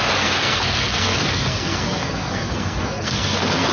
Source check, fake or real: fake